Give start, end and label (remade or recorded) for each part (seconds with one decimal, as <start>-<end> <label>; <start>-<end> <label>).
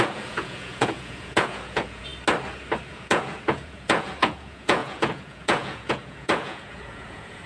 0.0-2.1 remade; 2.1-2.9 recorded; 2.9-7.5 remade